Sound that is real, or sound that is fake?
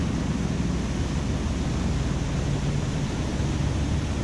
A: real